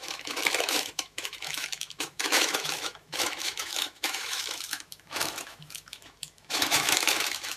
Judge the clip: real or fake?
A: fake